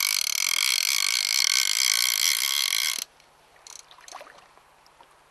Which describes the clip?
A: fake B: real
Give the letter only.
B